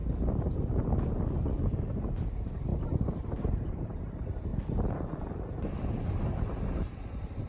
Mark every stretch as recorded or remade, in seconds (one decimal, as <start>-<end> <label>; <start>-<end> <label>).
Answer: 0.0-1.6 recorded; 1.6-4.5 remade; 4.5-5.9 recorded; 5.9-7.5 remade